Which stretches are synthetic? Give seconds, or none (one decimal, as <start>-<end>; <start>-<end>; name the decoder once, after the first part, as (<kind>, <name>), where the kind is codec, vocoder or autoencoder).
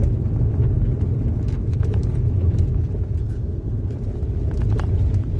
3.2-3.9 (codec, SNAC)